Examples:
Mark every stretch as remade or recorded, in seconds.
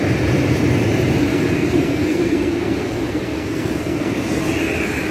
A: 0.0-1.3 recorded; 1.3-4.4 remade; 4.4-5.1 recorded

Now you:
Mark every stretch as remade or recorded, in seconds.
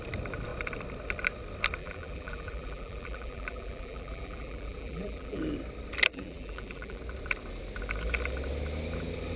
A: 0.0-1.8 recorded; 1.8-5.4 remade; 5.4-6.1 recorded; 6.1-7.0 remade; 7.0-9.4 recorded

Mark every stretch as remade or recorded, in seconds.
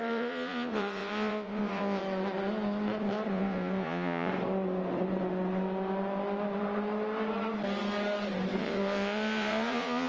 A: 0.0-2.0 remade; 2.0-3.3 recorded; 3.3-4.3 remade; 4.3-8.6 recorded; 8.6-10.1 remade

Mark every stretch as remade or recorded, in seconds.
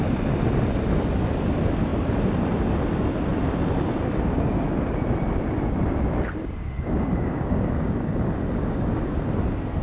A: 0.0-6.6 recorded; 6.6-8.1 remade; 8.1-8.6 recorded; 8.6-9.2 remade; 9.2-9.8 recorded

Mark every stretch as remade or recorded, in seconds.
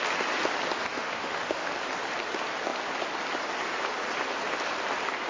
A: 0.0-0.9 recorded; 0.9-1.7 remade; 1.7-5.3 recorded